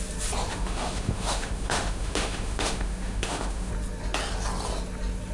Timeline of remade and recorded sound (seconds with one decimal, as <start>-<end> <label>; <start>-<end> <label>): 0.0-0.5 recorded; 0.5-3.7 remade; 3.7-5.3 recorded